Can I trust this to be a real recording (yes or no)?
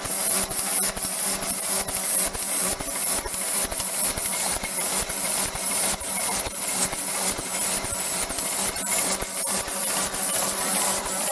no